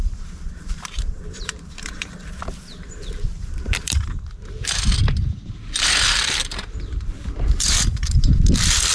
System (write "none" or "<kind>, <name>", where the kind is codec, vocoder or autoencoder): vocoder, BigVGAN v2